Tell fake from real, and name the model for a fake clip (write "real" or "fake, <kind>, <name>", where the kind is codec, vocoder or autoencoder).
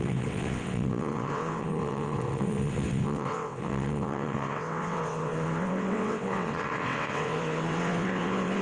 fake, vocoder, WaveNeXt